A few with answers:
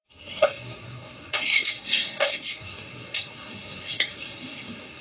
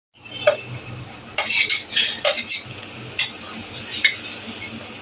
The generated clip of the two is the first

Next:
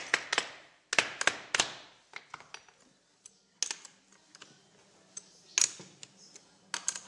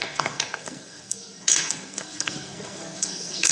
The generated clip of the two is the second